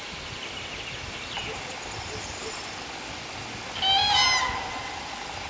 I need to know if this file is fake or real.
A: real